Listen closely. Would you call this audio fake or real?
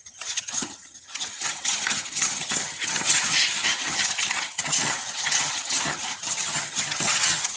fake